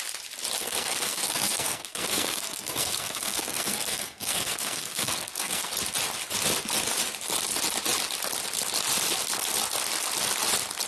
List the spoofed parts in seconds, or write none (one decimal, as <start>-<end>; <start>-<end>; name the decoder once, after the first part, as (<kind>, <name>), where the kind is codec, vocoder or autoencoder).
0.6-5.7 (codec, SNAC)